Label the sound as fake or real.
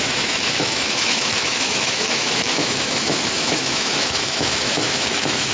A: fake